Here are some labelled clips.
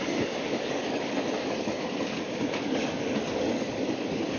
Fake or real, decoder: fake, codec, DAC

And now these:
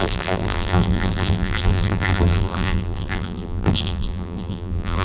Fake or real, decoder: fake, vocoder, BigVGAN v2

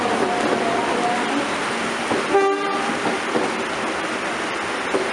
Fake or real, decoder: real